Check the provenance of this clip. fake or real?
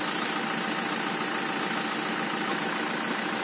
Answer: real